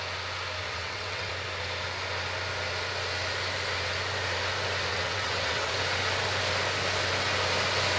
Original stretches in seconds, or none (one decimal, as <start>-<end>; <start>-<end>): 0.0-0.6; 1.3-4.9; 5.7-8.0